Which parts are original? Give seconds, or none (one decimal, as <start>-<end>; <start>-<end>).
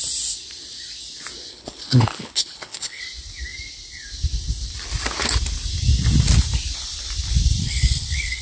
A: 0.0-1.5; 3.0-7.6